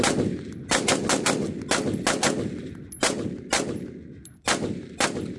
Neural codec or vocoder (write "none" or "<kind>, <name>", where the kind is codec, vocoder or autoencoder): none